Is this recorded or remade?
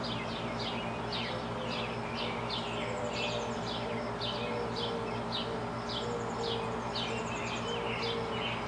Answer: recorded